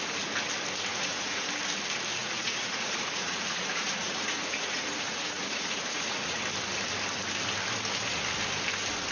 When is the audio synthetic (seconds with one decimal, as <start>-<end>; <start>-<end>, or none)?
0.9-1.5; 2.2-6.4